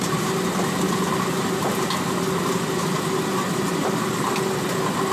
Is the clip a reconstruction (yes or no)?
no